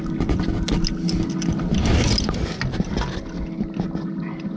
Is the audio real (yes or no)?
yes